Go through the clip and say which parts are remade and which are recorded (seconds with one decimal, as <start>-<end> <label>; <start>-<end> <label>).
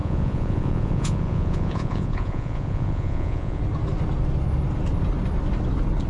0.0-3.6 remade; 3.6-6.1 recorded